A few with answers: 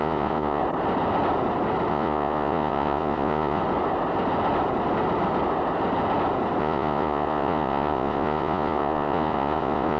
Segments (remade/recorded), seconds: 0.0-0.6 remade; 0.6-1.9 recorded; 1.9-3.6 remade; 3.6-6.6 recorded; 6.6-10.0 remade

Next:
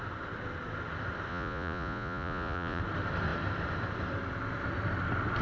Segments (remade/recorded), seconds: 0.0-1.3 recorded; 1.3-2.8 remade; 2.8-5.4 recorded

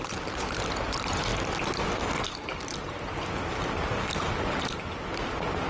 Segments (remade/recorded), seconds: 0.0-5.7 recorded

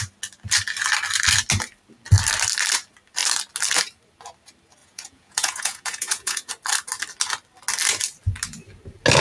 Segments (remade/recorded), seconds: 0.0-4.8 recorded; 4.8-6.5 remade; 6.5-9.2 recorded